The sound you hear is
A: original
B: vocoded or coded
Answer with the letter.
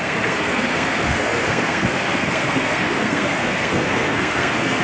B